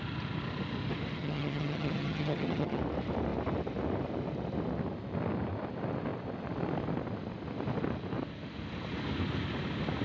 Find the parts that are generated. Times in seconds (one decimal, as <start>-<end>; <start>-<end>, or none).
1.2-2.8

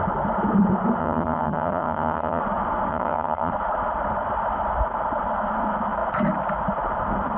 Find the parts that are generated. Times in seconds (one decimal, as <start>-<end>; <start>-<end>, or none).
1.0-2.4; 2.9-3.5

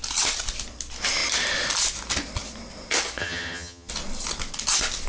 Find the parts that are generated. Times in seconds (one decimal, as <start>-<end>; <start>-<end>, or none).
3.2-3.9

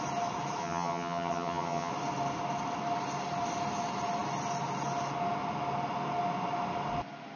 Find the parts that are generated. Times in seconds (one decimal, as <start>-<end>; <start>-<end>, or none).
0.6-1.9